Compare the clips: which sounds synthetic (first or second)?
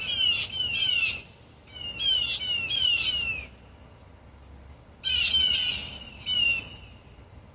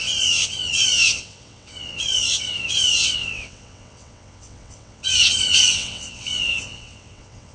second